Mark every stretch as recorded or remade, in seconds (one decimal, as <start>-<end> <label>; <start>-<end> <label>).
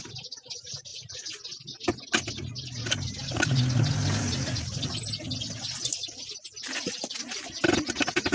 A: 0.0-8.3 recorded